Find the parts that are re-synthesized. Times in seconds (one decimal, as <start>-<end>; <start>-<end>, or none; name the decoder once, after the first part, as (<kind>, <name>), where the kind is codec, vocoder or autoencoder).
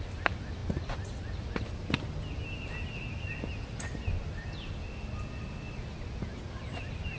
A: none